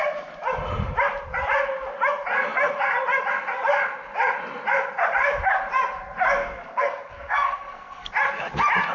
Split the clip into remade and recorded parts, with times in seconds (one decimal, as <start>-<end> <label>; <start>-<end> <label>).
0.0-6.4 recorded; 6.4-8.1 remade; 8.1-8.9 recorded